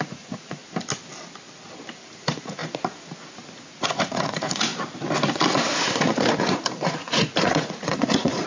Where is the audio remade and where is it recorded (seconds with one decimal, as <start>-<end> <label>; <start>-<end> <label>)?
0.0-0.6 remade; 0.6-2.2 recorded; 2.2-2.6 remade; 2.6-3.8 recorded; 3.8-4.7 remade; 4.7-6.4 recorded; 6.4-8.5 remade